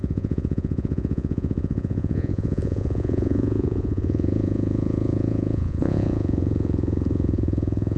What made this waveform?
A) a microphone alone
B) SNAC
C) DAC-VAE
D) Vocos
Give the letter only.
D